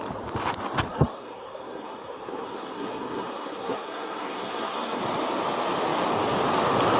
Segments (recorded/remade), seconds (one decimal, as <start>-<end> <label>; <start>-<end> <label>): 0.0-0.9 recorded; 0.9-5.0 remade; 5.0-7.0 recorded